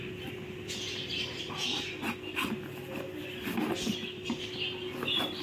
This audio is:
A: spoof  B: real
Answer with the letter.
B